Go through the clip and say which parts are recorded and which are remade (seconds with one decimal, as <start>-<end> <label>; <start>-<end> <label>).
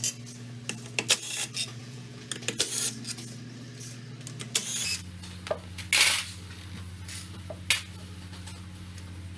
0.0-1.8 recorded; 1.8-2.3 remade; 2.3-9.4 recorded